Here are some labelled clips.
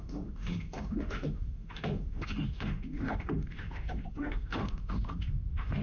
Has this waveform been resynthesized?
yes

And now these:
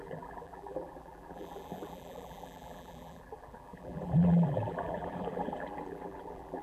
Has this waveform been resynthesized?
yes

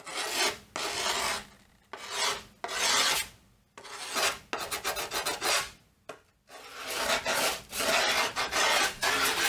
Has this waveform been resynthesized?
no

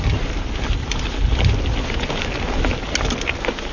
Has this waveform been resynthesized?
no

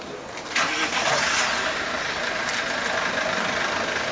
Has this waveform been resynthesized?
no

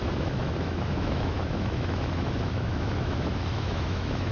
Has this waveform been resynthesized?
yes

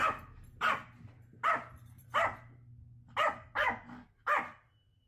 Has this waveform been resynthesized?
yes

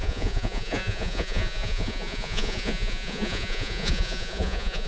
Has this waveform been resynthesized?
yes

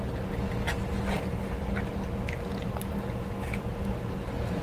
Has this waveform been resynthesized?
no